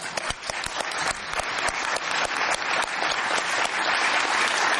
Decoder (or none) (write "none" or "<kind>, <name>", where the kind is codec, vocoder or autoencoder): none